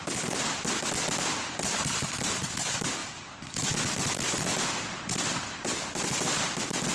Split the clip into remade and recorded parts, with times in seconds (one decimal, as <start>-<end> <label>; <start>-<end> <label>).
0.0-6.9 recorded